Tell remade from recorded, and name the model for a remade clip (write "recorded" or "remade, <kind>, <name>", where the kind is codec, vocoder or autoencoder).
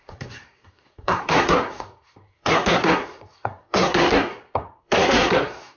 remade, codec, SNAC